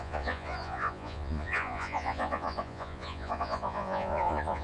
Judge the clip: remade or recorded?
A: remade